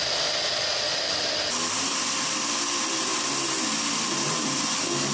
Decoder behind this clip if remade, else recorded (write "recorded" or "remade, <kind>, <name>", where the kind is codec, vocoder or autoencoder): recorded